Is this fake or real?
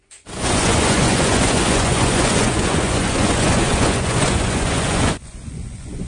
fake